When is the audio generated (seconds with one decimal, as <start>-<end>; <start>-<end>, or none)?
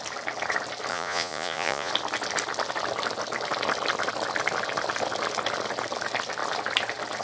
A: 0.9-1.9